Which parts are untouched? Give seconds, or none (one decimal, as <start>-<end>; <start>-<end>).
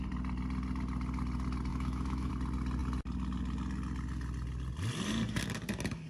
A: 0.0-1.7; 2.3-6.1